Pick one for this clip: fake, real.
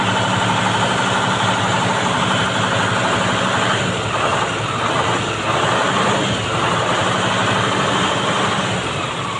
real